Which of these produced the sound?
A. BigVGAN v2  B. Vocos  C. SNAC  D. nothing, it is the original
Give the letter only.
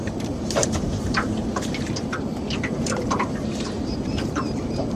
A